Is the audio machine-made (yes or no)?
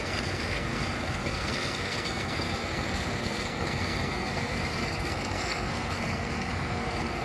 yes